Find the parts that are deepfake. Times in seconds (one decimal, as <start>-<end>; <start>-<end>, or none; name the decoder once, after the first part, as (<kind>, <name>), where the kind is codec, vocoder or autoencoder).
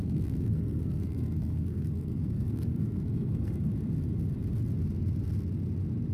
0.0-3.7 (codec, SNAC)